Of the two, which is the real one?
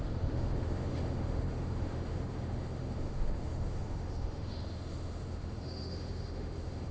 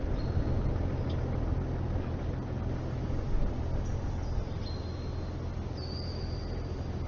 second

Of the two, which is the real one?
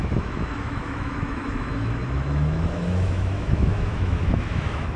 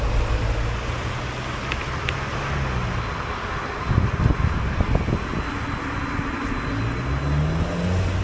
second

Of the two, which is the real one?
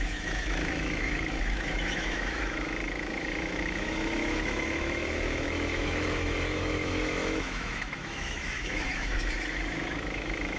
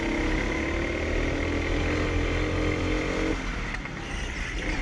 second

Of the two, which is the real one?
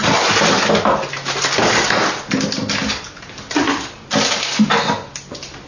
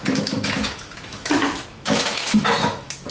first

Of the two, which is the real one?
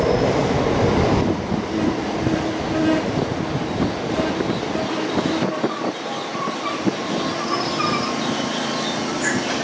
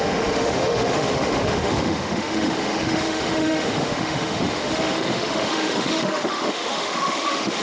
first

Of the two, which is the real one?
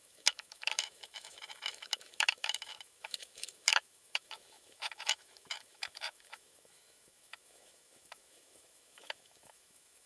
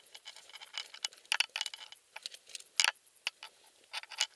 second